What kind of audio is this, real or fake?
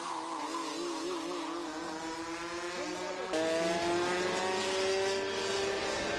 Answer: real